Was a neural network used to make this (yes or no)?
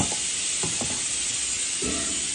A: no